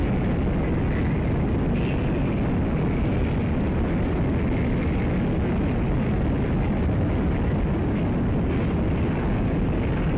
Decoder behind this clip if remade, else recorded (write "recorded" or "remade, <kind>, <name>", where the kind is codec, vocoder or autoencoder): recorded